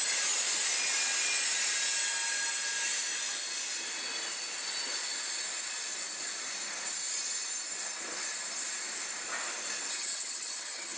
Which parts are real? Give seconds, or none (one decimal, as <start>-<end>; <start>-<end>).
0.0-10.0